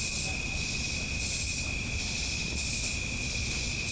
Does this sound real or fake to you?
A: real